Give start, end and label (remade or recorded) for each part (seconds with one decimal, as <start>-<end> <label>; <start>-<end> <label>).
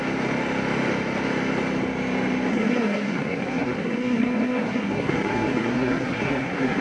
0.0-2.5 recorded; 2.5-6.8 remade